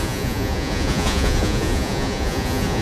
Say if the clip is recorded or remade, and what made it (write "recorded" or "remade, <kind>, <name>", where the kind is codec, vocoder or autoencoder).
remade, vocoder, Vocos